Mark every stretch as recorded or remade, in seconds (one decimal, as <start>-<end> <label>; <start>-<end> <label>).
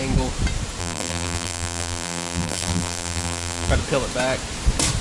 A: 0.0-0.8 recorded; 0.8-3.7 remade; 3.7-5.0 recorded